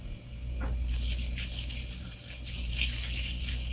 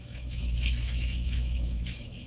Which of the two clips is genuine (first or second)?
first